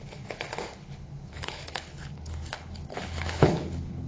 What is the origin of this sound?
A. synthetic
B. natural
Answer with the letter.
A